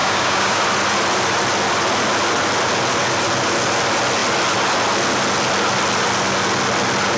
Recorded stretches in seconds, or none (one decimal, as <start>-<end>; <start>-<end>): 0.6-7.2